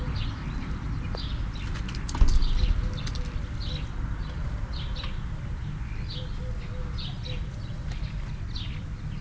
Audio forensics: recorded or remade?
recorded